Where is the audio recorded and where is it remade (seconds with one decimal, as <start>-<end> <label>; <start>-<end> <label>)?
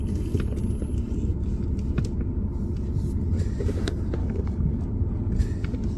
0.0-4.2 recorded; 4.2-4.8 remade; 4.8-6.0 recorded